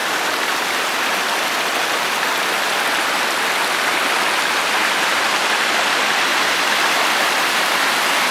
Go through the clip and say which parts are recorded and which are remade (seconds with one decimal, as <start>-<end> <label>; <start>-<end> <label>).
0.0-8.3 recorded